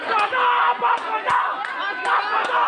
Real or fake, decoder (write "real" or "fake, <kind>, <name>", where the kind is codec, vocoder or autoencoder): real